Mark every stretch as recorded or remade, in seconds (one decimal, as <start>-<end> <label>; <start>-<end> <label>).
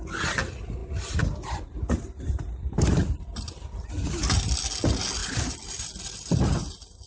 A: 0.0-7.1 recorded